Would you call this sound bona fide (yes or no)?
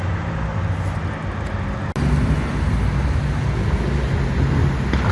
yes